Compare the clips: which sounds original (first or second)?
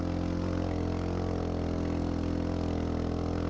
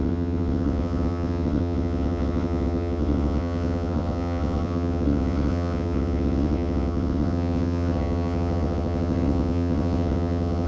first